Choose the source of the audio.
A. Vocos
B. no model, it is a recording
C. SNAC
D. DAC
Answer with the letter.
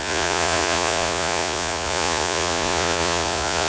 A